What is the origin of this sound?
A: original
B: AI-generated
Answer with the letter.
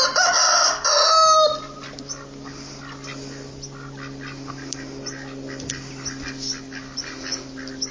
A